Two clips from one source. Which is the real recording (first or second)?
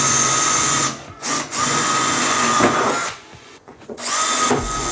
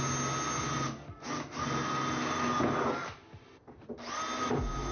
second